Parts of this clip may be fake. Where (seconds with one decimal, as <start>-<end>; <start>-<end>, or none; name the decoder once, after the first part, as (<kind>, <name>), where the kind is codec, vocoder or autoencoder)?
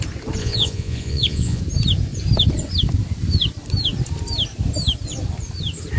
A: 0.4-1.6 (vocoder, Vocos)